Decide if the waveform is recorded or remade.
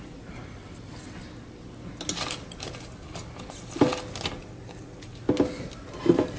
recorded